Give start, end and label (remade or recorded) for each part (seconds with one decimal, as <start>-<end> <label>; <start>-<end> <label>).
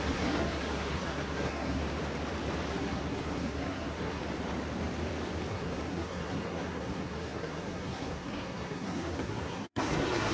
0.0-1.8 remade; 1.8-2.7 recorded; 2.7-4.2 remade; 4.2-5.5 recorded; 5.5-10.3 remade